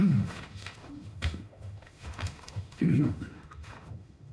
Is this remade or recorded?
remade